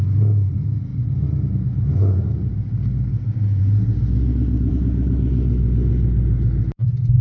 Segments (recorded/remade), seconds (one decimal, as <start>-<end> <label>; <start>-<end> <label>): 0.0-7.2 recorded

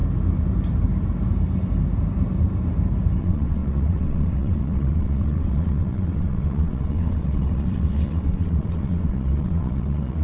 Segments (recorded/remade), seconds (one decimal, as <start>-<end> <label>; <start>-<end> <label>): 0.0-3.2 recorded; 3.2-10.2 remade

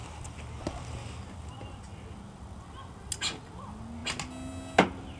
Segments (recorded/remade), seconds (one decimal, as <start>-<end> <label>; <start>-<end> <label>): 0.0-5.2 recorded

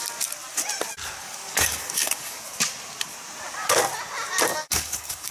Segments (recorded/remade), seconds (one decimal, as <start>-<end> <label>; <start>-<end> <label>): 0.0-1.2 recorded; 1.2-2.4 remade; 2.4-4.5 recorded; 4.5-5.3 remade

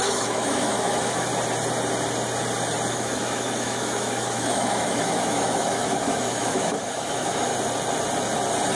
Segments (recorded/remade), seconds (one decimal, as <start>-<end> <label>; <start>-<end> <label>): 0.0-1.3 remade; 1.3-2.9 recorded; 2.9-7.5 remade; 7.5-8.8 recorded

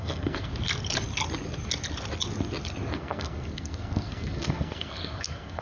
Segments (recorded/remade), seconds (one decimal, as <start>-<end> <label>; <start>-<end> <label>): 0.0-0.5 remade; 0.5-2.9 recorded; 2.9-5.6 remade

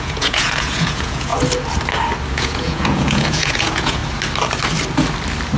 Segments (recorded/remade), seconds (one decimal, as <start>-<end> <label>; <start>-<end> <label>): 0.0-1.3 remade; 1.3-2.3 recorded; 2.3-4.0 remade; 4.0-5.6 recorded